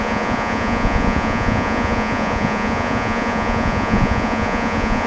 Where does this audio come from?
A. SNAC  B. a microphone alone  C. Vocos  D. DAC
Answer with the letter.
C